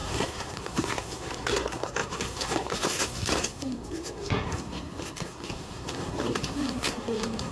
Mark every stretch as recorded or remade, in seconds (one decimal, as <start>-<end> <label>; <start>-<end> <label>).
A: 0.0-7.5 remade